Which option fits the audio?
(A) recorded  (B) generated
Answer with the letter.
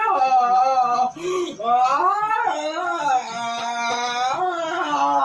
A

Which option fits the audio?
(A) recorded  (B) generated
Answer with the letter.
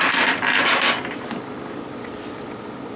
A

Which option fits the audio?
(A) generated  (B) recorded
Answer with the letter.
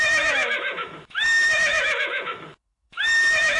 A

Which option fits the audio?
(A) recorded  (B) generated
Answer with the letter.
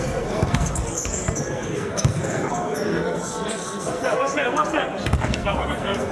B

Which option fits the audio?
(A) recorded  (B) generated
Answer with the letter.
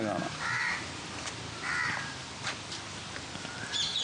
A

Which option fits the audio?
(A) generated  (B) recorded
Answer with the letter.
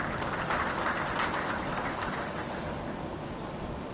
B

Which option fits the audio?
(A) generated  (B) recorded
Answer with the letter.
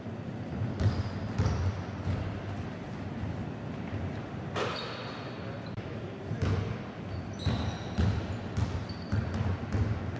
B